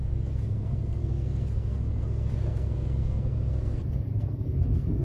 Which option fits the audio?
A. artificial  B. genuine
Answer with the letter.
A